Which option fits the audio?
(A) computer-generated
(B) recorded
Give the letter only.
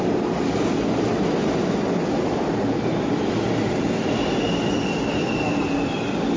A